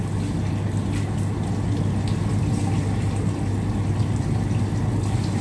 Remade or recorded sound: recorded